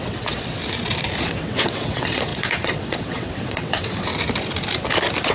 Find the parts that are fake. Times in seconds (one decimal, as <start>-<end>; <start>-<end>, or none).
0.0-0.6; 1.2-4.1

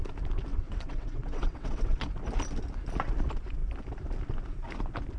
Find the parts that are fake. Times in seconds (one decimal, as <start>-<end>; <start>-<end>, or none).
0.5-2.1

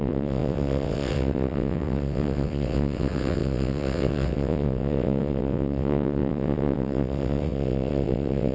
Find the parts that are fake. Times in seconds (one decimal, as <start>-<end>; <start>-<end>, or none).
0.0-8.5